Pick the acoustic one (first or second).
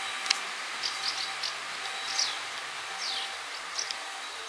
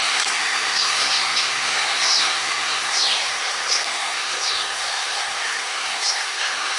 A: first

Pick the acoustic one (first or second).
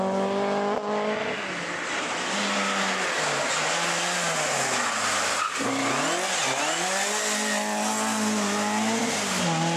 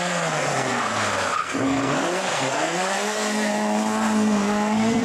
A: first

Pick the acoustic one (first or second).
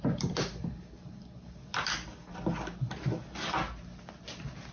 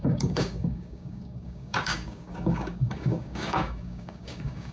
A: first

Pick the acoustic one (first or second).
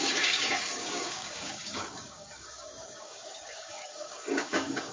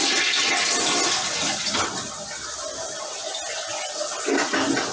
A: second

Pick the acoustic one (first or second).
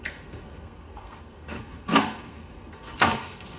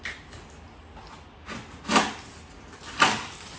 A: second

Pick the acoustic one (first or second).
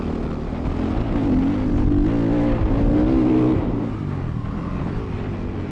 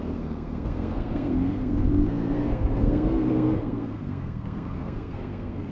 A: first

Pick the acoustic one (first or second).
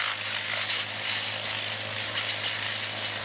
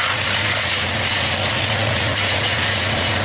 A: first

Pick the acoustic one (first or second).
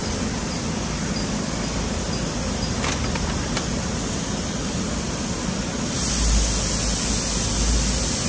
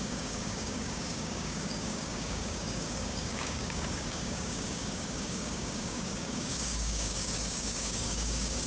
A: first